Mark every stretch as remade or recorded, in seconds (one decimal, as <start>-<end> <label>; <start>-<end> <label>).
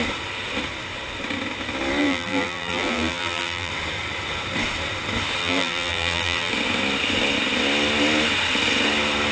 0.0-2.0 recorded; 2.0-3.7 remade; 3.7-5.4 recorded; 5.4-6.5 remade; 6.5-9.3 recorded